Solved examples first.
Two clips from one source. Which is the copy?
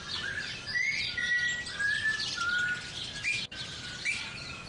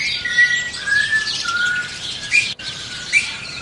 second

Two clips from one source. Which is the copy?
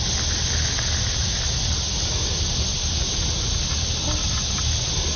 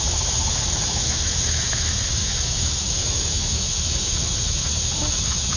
second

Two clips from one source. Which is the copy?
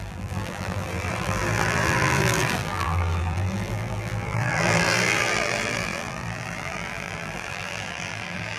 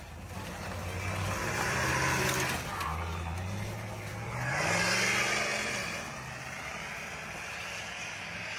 first